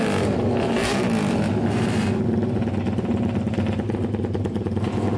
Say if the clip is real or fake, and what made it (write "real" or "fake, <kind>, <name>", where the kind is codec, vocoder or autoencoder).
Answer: real